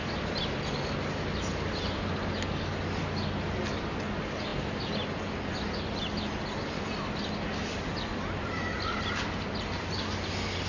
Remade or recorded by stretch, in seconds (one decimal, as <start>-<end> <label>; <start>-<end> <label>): 0.0-10.7 recorded

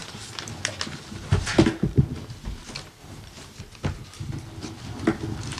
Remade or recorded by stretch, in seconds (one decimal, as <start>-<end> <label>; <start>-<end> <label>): 0.0-0.7 remade; 0.7-1.3 recorded; 1.3-2.1 remade; 2.1-3.0 recorded; 3.0-3.6 remade; 3.6-5.6 recorded

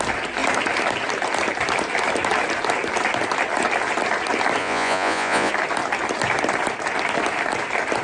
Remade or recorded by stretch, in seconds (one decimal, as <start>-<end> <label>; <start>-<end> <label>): 0.0-4.6 recorded; 4.6-5.5 remade; 5.5-8.0 recorded

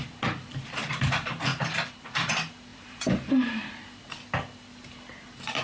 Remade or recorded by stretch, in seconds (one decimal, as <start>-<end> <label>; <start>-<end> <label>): 0.0-2.7 recorded; 2.7-3.6 remade; 3.6-5.6 recorded

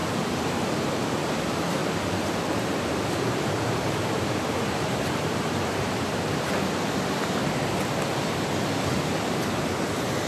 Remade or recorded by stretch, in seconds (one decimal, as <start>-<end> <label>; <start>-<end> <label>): 0.0-1.8 recorded; 1.8-6.9 remade; 6.9-10.3 recorded